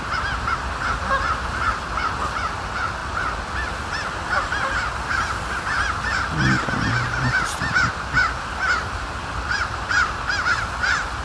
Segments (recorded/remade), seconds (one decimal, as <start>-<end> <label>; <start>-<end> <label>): 0.0-11.2 recorded